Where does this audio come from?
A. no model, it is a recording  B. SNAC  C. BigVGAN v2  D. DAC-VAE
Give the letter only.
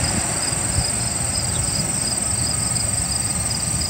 A